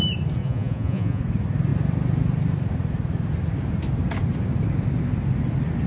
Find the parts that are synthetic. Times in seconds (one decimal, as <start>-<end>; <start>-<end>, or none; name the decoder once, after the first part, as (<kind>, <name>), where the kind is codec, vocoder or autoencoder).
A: 0.4-1.2 (vocoder, Vocos)